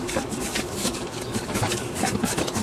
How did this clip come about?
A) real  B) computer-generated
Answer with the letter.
B